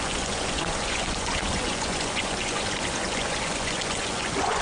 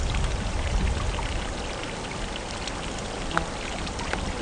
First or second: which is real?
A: second